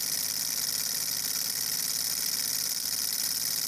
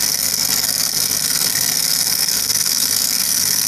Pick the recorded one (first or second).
first